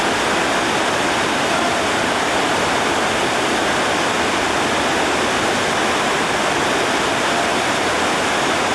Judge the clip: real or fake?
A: real